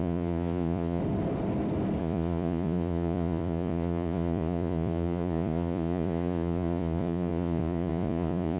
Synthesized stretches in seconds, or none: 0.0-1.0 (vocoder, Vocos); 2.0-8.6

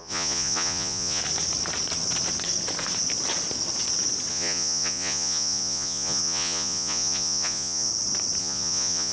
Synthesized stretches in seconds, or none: 0.0-1.2 (vocoder, Vocos); 4.3-7.9; 8.4-9.1

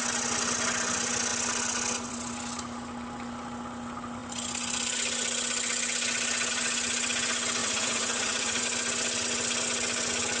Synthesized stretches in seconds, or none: 7.6-8.6 (vocoder, Vocos)

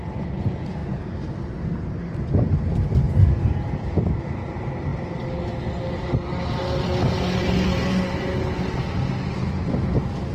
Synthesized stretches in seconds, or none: none

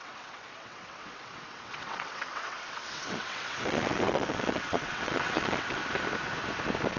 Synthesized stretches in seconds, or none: 0.0-5.8 (vocoder, WaveNeXt)

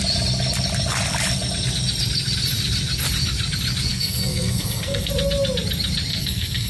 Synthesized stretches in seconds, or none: 3.9-5.1 (codec, SNAC); 6.1-6.7

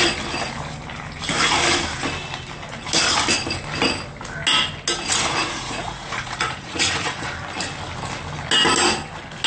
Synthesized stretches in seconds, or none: 5.4-7.3 (vocoder, Vocos)